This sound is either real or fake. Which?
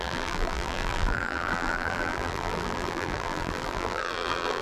fake